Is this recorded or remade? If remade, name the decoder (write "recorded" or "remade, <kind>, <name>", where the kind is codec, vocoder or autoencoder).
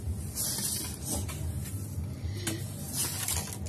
recorded